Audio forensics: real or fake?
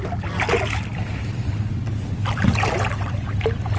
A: real